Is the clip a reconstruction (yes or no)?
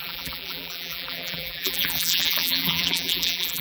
yes